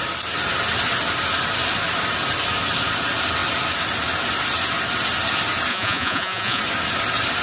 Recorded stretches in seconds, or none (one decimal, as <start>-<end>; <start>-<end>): 0.0-5.7; 6.6-7.4